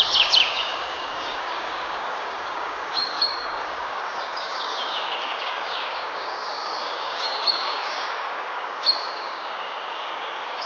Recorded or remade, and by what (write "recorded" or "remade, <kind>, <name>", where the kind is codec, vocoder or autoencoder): remade, codec, DAC